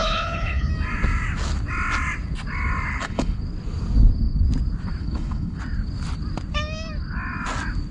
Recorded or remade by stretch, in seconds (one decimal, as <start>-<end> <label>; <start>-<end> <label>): 0.0-0.7 remade; 0.7-2.9 recorded; 2.9-3.4 remade; 3.4-5.0 recorded; 5.0-5.6 remade; 5.6-7.9 recorded